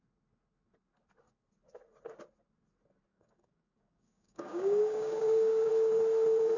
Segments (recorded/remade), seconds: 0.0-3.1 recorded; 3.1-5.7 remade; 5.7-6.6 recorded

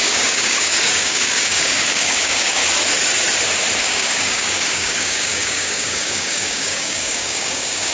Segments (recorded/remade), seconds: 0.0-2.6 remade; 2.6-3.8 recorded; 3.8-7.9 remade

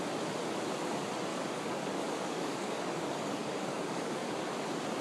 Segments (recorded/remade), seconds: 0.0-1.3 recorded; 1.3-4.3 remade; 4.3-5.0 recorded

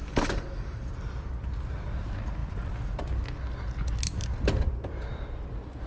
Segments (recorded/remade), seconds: 0.0-0.9 remade; 0.9-5.9 recorded

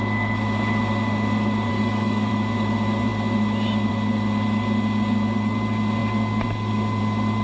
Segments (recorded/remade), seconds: 0.0-1.7 recorded; 1.7-2.3 remade; 2.3-7.4 recorded

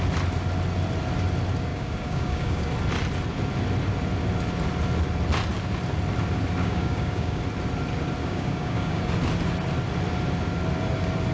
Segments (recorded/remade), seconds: 0.0-1.7 recorded; 1.7-2.7 remade; 2.7-6.6 recorded; 6.6-7.4 remade; 7.4-8.2 recorded; 8.2-9.0 remade; 9.0-11.3 recorded

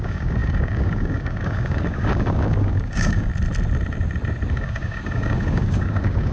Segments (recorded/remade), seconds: 0.0-3.3 remade; 3.3-4.5 recorded; 4.5-6.3 remade